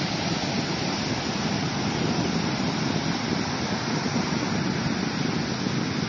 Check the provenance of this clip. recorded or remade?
recorded